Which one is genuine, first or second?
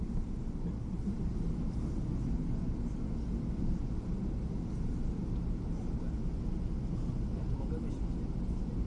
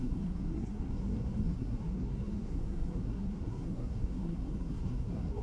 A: first